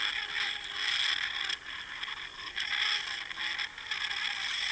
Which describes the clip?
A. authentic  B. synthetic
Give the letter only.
A